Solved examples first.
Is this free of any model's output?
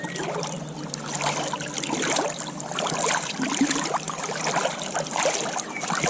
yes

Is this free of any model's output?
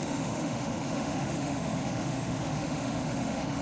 no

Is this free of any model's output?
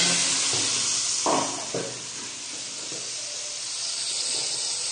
yes